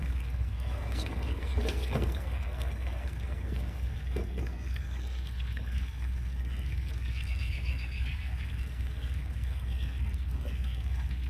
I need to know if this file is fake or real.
fake